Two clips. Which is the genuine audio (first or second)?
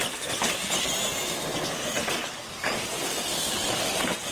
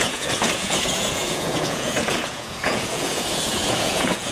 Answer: first